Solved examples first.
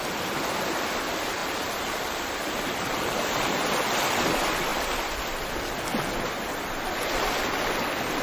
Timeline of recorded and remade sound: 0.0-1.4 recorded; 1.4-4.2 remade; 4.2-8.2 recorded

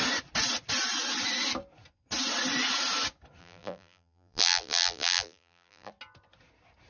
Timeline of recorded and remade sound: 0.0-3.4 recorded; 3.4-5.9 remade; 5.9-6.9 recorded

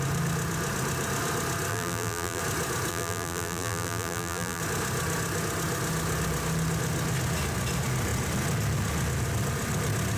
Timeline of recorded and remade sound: 0.0-1.7 recorded; 1.7-2.4 remade; 2.4-2.9 recorded; 2.9-4.6 remade; 4.6-10.2 recorded

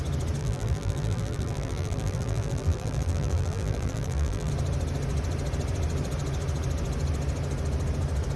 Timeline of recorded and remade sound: 0.0-0.4 recorded; 0.4-4.5 remade; 4.5-8.4 recorded

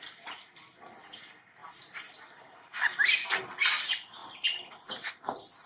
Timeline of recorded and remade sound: 0.0-1.6 recorded; 1.6-3.4 remade; 3.4-5.7 recorded

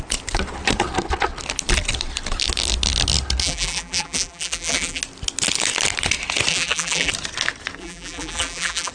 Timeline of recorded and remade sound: 0.0-3.4 recorded; 3.4-5.0 remade; 5.0-6.5 recorded; 6.5-7.1 remade; 7.1-7.8 recorded; 7.8-8.9 remade

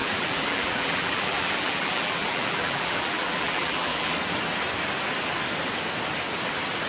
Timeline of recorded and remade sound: 0.0-4.1 remade; 4.1-6.9 recorded